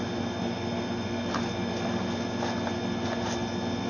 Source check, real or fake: real